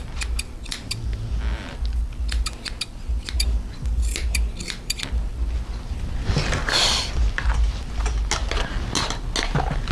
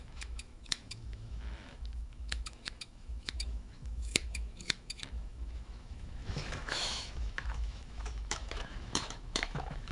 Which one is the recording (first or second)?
first